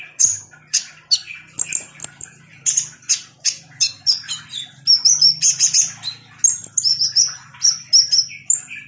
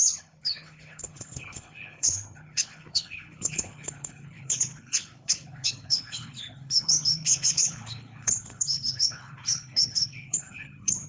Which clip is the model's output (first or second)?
second